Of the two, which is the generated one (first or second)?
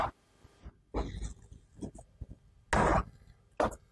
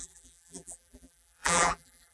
second